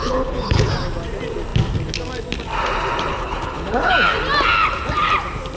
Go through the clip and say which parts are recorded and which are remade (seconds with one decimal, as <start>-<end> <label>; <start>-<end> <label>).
0.0-0.7 remade; 0.7-3.1 recorded; 3.1-3.9 remade; 3.9-5.6 recorded